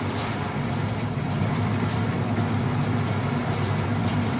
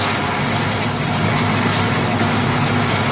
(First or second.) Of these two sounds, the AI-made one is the first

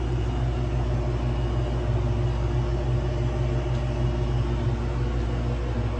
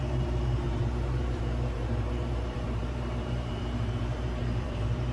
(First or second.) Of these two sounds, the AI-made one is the second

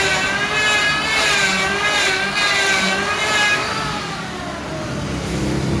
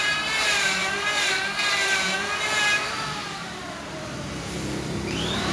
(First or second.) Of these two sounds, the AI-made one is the second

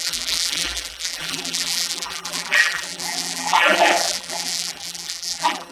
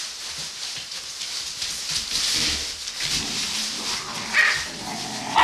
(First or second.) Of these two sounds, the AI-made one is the first